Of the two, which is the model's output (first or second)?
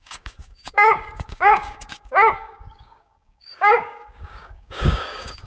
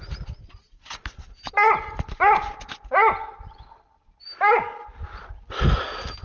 first